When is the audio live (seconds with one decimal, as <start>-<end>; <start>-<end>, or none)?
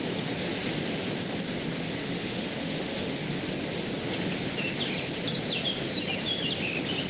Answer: 0.0-2.0; 3.1-7.1